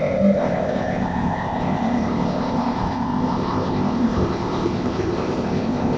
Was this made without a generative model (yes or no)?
no